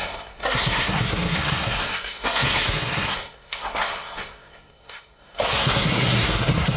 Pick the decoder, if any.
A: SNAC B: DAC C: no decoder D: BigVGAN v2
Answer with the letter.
A